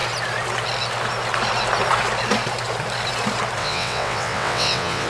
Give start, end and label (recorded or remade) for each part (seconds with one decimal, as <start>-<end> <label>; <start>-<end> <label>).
0.0-3.6 recorded; 3.6-5.1 remade